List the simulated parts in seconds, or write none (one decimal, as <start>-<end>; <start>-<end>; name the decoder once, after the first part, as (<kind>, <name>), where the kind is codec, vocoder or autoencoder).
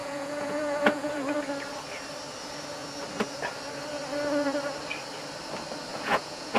0.0-1.3 (vocoder, Vocos); 5.9-6.6